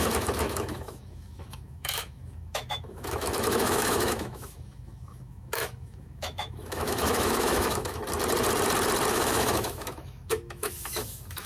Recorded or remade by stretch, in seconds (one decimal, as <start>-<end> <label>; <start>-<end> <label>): 0.0-8.0 remade; 8.0-9.1 recorded; 9.1-11.5 remade